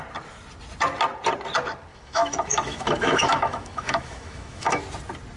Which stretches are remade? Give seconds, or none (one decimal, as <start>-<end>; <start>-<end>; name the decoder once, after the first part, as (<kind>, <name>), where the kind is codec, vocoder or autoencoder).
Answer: 1.9-4.8 (autoencoder, DAC-VAE)

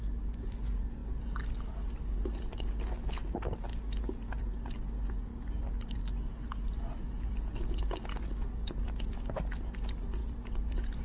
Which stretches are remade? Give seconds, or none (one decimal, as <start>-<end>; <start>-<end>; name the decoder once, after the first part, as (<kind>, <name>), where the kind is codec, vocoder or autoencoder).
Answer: none

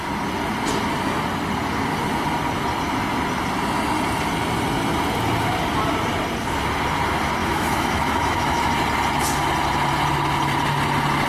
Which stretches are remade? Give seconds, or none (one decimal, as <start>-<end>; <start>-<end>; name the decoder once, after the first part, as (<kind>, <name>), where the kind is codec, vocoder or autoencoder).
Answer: 7.4-8.7 (autoencoder, DAC-VAE)

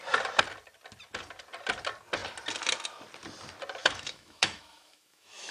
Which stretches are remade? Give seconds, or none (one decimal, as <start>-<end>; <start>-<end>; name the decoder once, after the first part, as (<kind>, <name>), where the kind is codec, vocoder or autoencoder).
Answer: 3.8-5.5 (autoencoder, DAC-VAE)